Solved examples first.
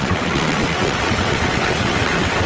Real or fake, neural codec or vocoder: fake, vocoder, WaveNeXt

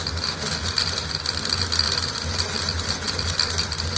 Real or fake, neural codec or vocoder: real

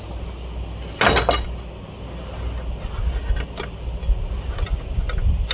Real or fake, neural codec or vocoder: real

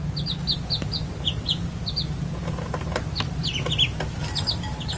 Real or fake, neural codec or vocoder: real